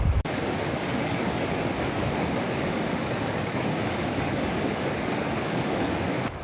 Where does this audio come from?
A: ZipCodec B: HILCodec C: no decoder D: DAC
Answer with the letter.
D